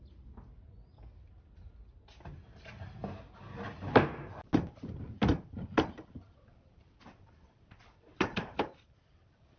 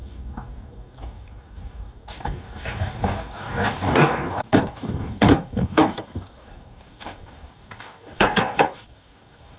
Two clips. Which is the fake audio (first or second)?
second